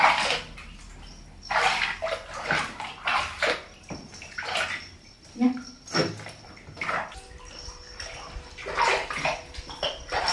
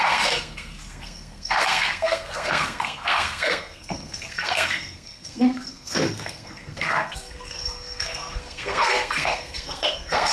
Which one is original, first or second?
first